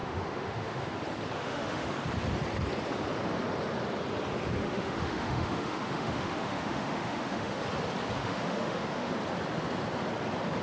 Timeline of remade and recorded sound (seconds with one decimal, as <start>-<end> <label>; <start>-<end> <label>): 0.0-0.9 remade; 0.9-1.4 recorded; 1.4-1.9 remade; 1.9-4.6 recorded; 4.6-7.6 remade; 7.6-8.2 recorded; 8.2-9.1 remade; 9.1-10.6 recorded